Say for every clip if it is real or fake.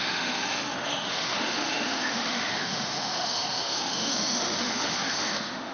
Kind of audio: fake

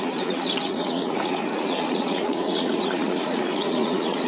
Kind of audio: fake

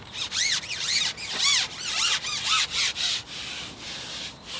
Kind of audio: real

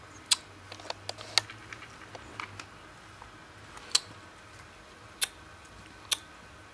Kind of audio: real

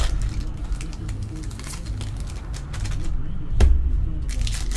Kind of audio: real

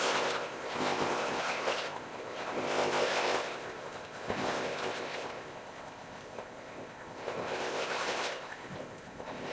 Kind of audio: fake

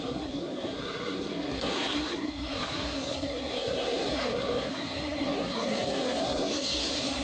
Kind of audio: fake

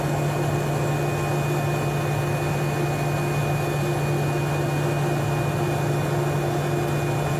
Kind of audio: real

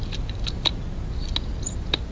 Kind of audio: real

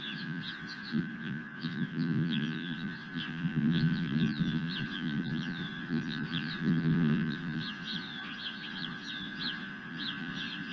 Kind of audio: fake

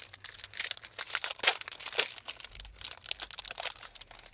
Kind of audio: real